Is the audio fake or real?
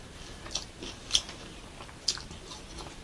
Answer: real